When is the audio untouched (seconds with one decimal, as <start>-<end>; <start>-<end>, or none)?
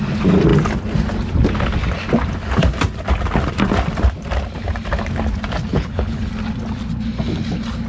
0.0-5.7; 6.3-7.9